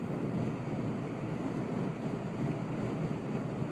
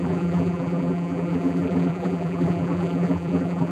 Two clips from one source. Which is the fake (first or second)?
second